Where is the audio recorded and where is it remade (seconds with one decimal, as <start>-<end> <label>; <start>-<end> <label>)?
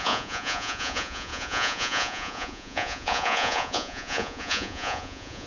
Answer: 0.0-5.5 remade